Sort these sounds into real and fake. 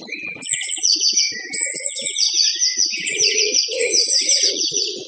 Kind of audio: fake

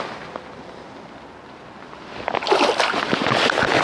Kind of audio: real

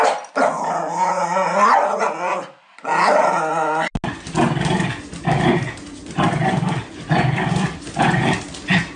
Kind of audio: real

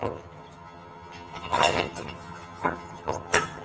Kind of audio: fake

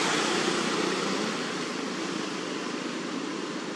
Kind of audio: real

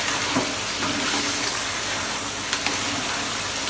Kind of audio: real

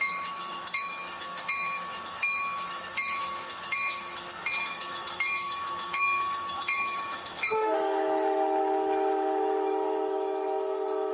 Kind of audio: fake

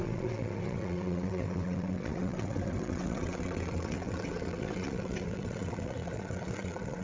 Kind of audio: fake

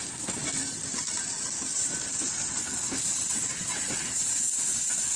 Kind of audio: real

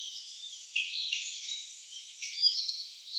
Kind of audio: fake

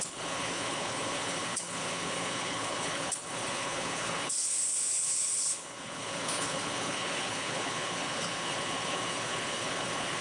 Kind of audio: fake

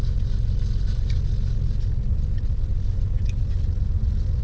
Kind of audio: real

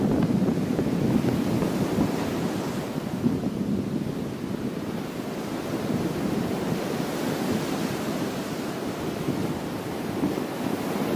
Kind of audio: real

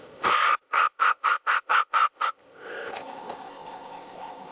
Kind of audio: fake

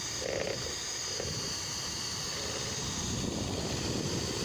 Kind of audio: fake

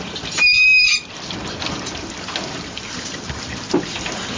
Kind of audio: real